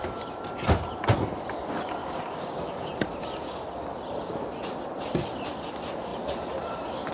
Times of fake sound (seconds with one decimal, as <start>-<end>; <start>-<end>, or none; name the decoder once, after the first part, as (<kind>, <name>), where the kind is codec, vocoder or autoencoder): 2.0-2.9 (codec, DAC)